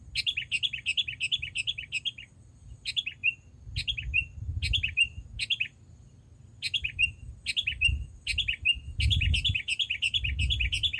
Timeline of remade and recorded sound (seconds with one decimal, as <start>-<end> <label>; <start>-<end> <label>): 0.0-11.0 recorded